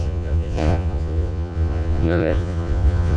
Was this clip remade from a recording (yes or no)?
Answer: yes